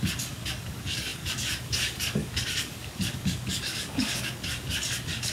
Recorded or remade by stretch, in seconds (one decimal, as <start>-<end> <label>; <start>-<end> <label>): 0.0-5.3 remade